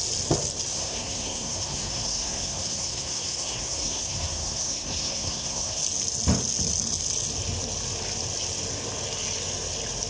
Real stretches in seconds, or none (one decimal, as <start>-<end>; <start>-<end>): 0.0-0.7; 5.8-10.1